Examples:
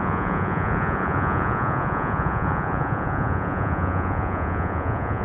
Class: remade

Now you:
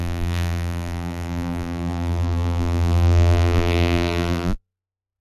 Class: remade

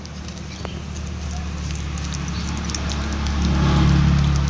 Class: recorded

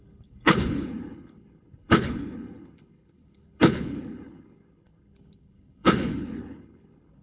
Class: remade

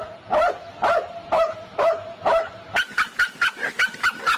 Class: recorded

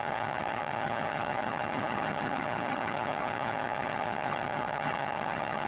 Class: remade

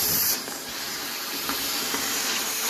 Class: remade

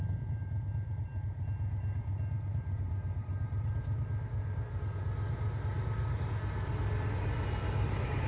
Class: recorded